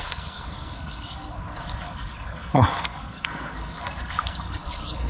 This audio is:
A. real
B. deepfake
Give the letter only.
B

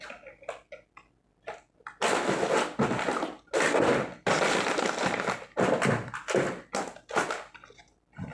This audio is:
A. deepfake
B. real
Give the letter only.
B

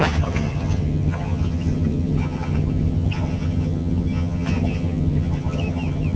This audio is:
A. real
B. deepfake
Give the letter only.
B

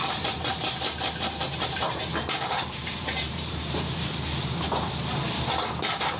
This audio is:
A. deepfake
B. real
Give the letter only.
A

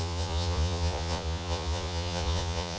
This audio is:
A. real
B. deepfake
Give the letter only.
B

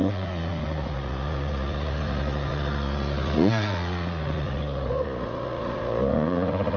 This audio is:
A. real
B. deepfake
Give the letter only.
B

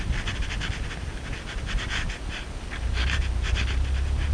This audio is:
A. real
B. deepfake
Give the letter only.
A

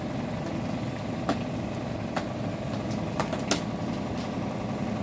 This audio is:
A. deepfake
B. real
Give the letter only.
B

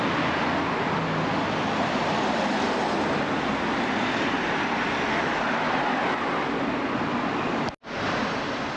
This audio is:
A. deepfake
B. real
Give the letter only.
B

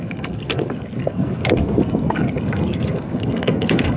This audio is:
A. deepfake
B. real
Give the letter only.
A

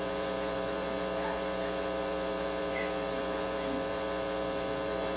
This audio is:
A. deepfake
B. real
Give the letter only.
A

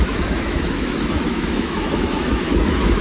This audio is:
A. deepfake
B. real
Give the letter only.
A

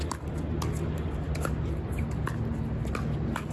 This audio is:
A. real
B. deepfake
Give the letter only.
A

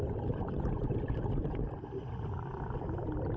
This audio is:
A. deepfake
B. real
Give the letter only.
B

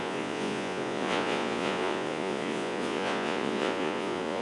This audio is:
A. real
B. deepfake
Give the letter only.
B